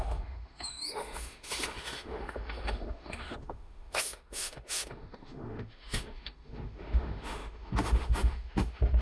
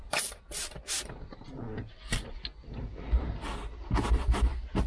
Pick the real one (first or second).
second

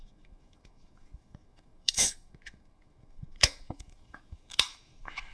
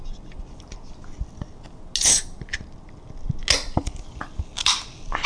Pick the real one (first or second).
second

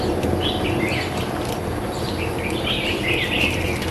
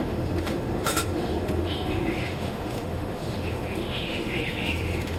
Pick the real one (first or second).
first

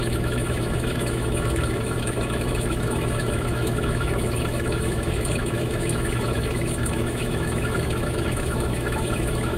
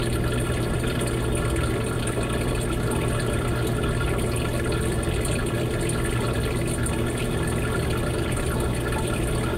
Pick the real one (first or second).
second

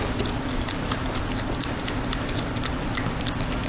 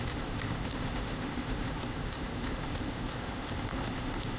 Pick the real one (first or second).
first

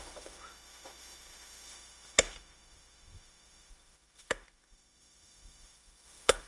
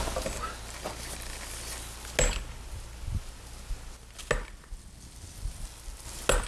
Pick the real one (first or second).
second